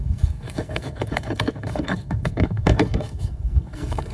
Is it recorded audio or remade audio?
remade